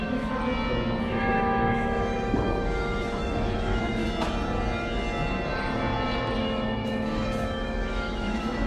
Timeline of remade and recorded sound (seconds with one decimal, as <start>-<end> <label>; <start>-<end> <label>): 0.0-0.4 remade; 0.4-1.1 recorded; 1.1-4.0 remade; 4.0-6.4 recorded; 6.4-8.7 remade